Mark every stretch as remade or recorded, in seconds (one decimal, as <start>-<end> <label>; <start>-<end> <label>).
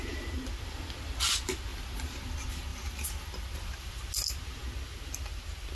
0.0-1.7 recorded; 1.7-2.3 remade; 2.3-2.7 recorded; 2.7-3.9 remade; 3.9-5.7 recorded